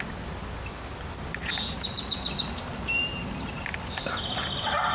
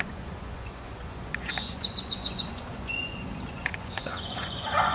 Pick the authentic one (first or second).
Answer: first